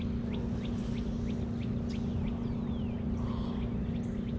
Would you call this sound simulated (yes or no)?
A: no